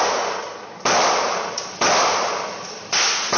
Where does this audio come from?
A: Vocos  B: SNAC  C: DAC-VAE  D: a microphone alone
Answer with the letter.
D